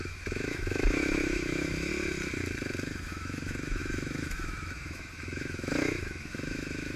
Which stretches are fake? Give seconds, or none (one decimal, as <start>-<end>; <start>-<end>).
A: 0.0-1.9; 3.0-7.0